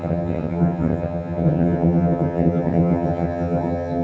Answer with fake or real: fake